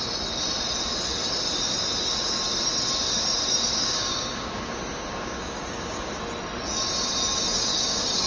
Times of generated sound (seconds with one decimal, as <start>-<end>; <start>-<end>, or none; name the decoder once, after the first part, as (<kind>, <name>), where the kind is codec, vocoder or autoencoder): 3.8-6.2 (codec, DAC); 7.7-8.3